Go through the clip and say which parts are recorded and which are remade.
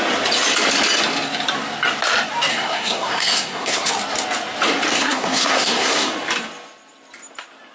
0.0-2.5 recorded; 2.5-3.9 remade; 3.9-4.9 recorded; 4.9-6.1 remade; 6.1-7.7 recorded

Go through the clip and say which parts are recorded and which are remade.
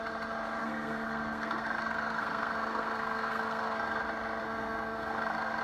0.0-0.6 recorded; 0.6-4.0 remade; 4.0-4.4 recorded; 4.4-5.6 remade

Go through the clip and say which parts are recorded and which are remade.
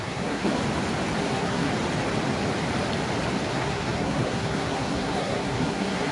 0.0-0.6 remade; 0.6-1.2 recorded; 1.2-1.7 remade; 1.7-3.5 recorded; 3.5-6.1 remade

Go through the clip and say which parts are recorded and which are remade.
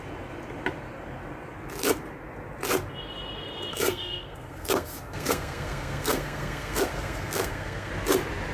0.0-3.7 recorded; 3.7-7.9 remade; 7.9-8.5 recorded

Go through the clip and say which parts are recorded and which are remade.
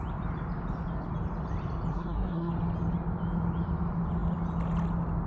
0.0-1.9 recorded; 1.9-2.5 remade; 2.5-5.3 recorded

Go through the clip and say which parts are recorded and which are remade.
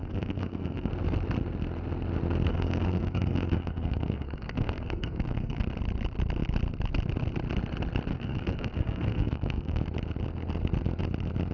0.0-0.9 remade; 0.9-2.5 recorded; 2.5-5.6 remade; 5.6-8.1 recorded; 8.1-9.8 remade; 9.8-11.5 recorded